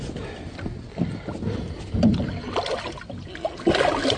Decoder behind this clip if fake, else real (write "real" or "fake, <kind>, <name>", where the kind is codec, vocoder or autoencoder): real